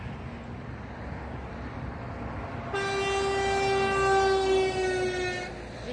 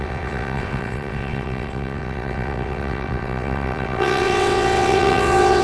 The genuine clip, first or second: first